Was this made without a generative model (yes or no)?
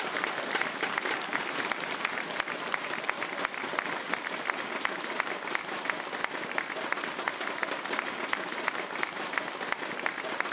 yes